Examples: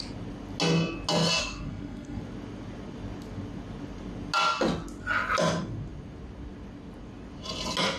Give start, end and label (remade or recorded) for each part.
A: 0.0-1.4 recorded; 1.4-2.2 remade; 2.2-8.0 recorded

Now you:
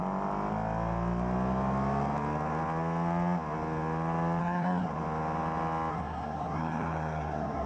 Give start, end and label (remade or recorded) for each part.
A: 0.0-4.4 recorded; 4.4-4.9 remade; 4.9-5.9 recorded; 5.9-7.7 remade

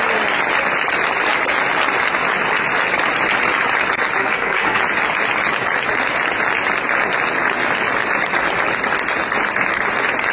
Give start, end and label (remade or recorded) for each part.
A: 0.0-4.2 recorded; 4.2-4.8 remade; 4.8-10.3 recorded

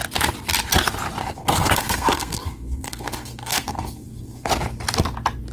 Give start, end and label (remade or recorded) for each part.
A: 0.0-1.2 recorded; 1.2-4.5 remade; 4.5-5.5 recorded